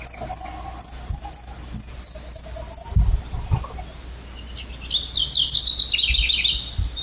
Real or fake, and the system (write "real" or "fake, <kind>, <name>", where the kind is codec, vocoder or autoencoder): real